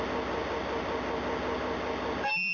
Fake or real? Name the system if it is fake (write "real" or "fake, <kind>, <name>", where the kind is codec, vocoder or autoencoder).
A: real